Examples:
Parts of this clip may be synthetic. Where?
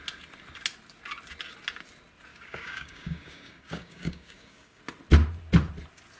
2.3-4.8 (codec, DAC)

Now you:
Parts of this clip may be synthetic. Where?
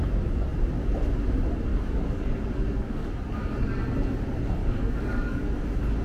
1.7-3.1 (codec, DAC); 4.6-5.5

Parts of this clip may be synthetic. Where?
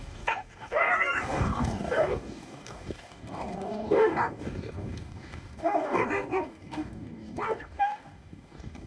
0.0-8.9 (codec, DAC)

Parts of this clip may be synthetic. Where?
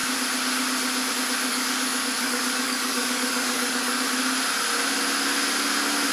1.5-4.0 (codec, DAC)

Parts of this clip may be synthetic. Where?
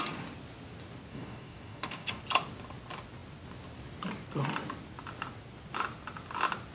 1.1-2.2 (codec, DAC)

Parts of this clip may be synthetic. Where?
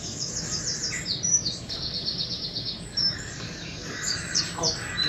0.0-0.6 (codec, DAC); 1.3-4.4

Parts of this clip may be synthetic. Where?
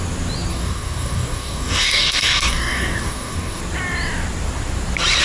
0.5-3.6 (codec, DAC)